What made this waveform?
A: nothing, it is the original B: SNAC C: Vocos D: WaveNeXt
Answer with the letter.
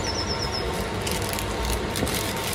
A